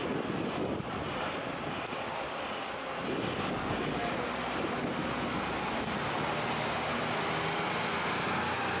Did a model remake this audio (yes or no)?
no